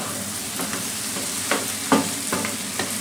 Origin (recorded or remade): recorded